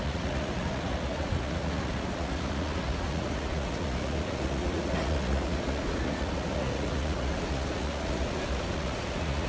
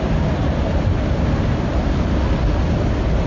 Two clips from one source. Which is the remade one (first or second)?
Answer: first